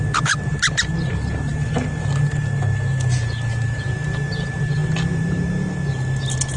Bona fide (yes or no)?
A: yes